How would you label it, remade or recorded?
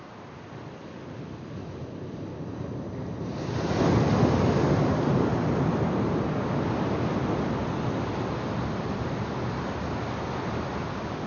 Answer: recorded